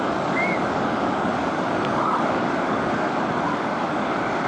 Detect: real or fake fake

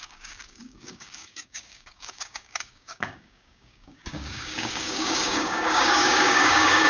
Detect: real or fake fake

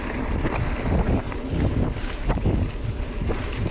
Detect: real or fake real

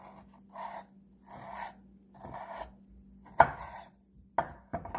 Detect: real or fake real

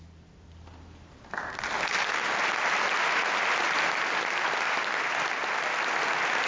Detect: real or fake real